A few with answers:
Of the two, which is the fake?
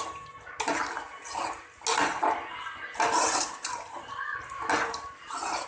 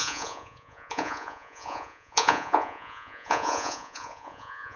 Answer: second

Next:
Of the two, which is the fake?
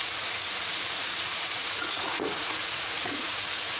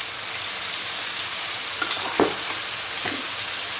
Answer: first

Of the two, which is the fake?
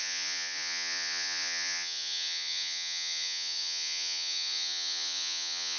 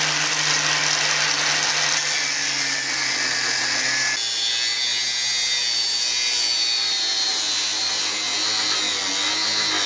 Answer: first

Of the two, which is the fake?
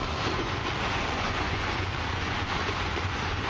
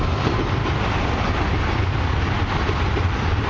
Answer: first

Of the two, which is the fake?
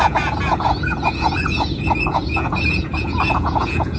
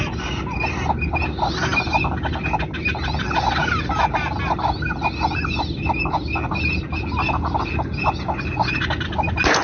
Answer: first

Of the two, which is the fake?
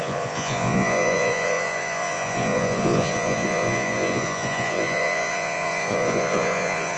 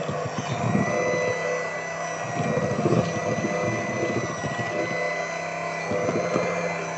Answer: first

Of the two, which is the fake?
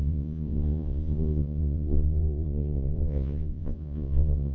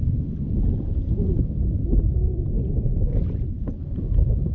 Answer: first